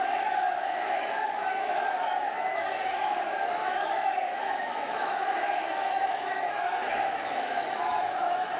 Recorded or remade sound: remade